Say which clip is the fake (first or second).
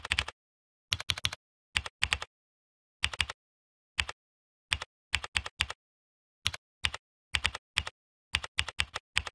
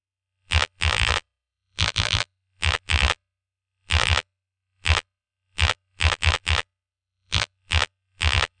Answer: second